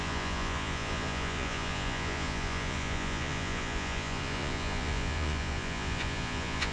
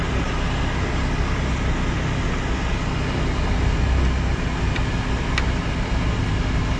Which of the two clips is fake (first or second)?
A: first